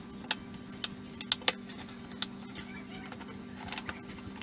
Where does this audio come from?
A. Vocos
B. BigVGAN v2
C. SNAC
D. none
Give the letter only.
D